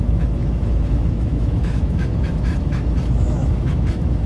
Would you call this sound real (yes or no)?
no